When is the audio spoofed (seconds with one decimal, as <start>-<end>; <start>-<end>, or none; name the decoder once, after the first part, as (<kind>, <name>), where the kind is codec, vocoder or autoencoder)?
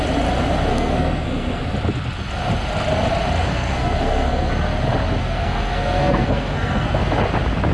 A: 0.7-1.6 (codec, SNAC); 3.4-4.5; 5.2-7.0